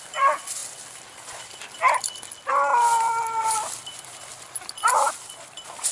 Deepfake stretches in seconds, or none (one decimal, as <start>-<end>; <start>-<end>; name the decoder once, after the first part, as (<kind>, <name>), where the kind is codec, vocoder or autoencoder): 0.0-0.6 (vocoder, BigVGAN v2); 1.5-5.9